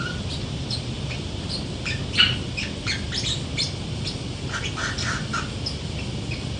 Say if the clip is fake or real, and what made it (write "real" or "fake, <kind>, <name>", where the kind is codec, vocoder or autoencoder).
real